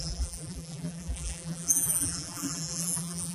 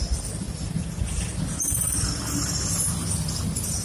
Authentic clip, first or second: second